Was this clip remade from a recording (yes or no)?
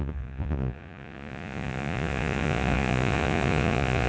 yes